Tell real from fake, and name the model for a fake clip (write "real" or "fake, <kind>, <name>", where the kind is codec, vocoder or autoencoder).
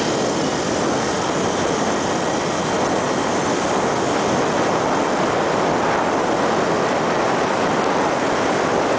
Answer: real